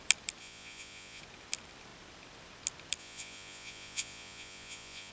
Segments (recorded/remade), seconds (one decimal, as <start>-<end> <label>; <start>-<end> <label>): 0.0-0.4 recorded; 0.4-1.2 remade; 1.2-3.0 recorded; 3.0-5.1 remade